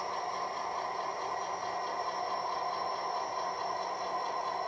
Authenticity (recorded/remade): recorded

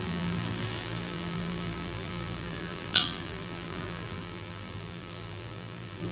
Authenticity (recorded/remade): remade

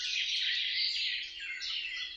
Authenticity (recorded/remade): recorded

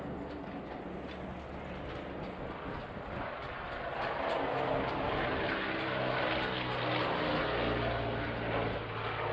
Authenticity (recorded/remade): recorded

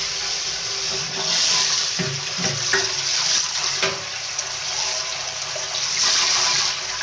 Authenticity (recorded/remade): remade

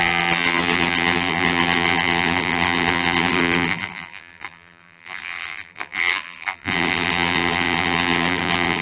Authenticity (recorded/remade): remade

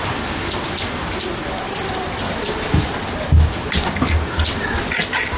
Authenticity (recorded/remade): recorded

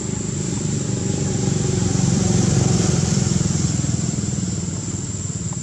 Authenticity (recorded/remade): remade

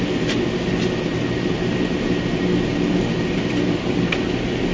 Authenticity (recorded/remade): recorded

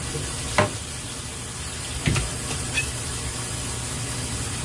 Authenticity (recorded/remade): recorded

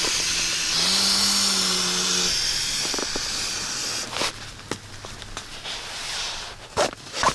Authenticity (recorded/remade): recorded